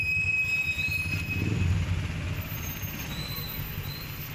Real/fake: real